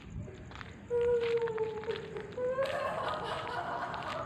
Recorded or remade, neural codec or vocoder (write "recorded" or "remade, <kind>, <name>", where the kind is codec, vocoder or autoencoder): recorded